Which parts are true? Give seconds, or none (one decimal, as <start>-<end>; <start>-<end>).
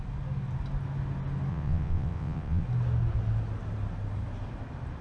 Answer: 0.0-1.5; 2.6-5.0